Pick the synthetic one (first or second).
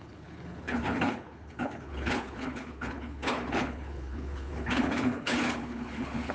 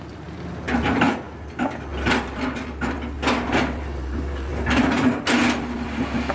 first